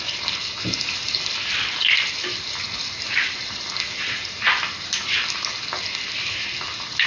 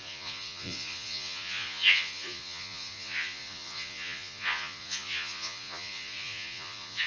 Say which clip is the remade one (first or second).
second